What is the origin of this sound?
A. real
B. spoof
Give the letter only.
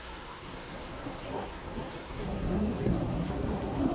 B